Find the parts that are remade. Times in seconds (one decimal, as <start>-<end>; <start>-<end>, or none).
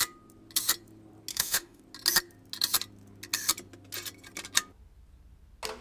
1.3-1.8